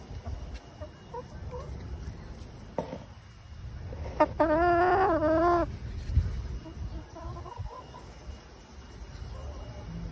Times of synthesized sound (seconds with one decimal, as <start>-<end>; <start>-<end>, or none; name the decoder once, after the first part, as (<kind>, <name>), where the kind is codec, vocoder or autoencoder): none